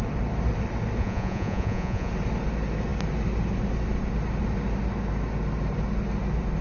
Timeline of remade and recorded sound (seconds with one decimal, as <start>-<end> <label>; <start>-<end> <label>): 0.0-1.0 recorded; 1.0-2.1 remade; 2.1-6.6 recorded